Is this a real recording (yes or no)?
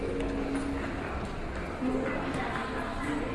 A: yes